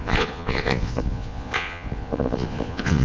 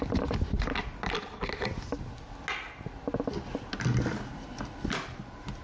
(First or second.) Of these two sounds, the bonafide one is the second